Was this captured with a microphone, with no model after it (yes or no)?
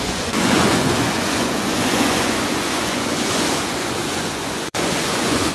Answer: no